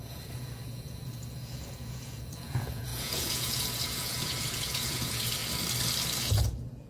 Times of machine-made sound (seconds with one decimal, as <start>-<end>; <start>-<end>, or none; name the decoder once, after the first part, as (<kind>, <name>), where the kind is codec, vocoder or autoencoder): 0.0-5.4 (vocoder, Vocos); 6.2-6.9